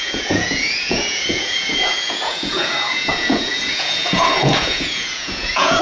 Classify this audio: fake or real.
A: fake